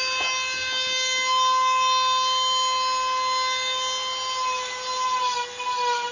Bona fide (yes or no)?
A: yes